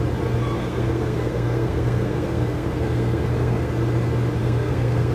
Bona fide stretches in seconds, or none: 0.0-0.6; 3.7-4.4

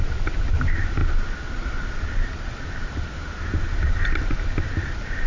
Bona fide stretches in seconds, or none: 0.0-5.3

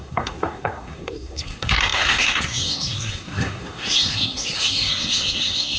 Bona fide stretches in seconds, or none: none

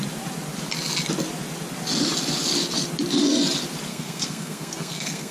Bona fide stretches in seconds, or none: 0.0-3.9

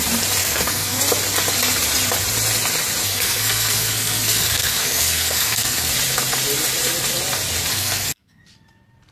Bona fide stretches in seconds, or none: 0.0-0.4; 1.0-3.0; 5.9-7.7; 8.4-9.1